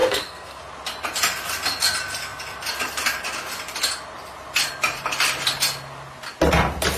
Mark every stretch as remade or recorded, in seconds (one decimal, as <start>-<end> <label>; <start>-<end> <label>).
0.0-0.6 remade; 0.6-7.0 recorded